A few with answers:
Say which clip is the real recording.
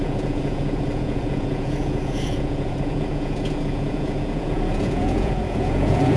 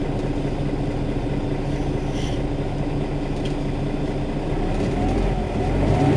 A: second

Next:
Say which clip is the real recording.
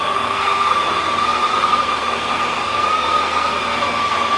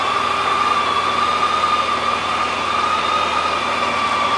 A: second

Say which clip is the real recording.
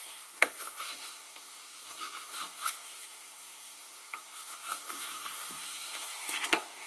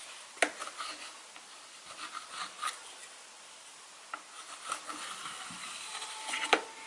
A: second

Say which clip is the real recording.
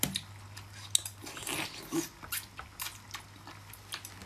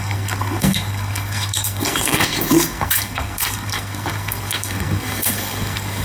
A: first